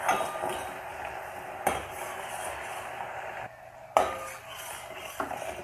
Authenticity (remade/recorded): recorded